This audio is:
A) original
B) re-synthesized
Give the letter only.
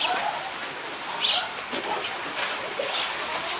A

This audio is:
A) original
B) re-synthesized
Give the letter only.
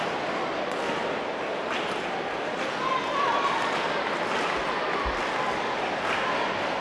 A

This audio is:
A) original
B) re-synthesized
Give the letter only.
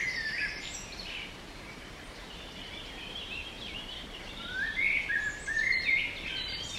B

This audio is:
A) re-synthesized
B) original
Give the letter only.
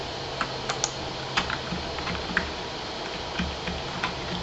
B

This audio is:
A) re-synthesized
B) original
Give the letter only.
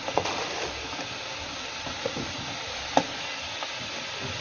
B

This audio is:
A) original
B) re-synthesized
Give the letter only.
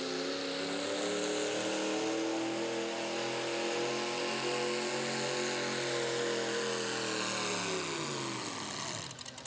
A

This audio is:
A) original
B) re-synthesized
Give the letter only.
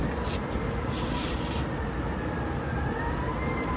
A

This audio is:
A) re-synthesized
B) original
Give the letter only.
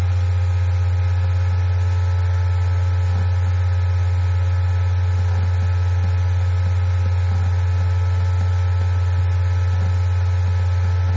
B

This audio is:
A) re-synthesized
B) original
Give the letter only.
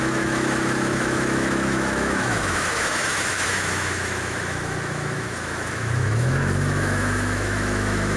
A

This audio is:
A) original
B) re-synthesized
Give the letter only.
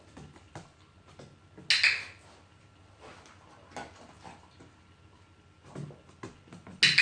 A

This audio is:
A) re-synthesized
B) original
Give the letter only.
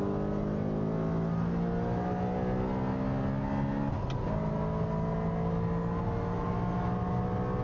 B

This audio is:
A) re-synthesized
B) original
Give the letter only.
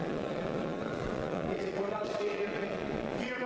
A